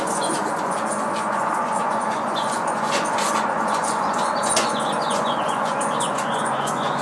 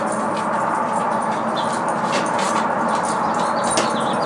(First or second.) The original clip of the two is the second